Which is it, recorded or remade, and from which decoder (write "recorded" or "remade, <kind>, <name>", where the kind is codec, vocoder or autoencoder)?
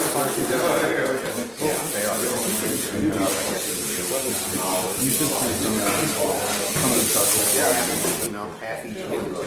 recorded